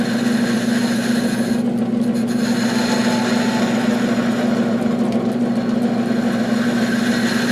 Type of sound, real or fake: real